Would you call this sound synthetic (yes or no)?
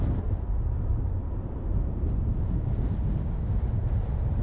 yes